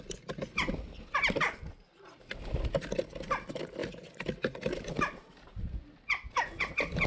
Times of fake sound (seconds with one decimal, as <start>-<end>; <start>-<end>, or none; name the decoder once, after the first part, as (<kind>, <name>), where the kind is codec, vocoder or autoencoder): none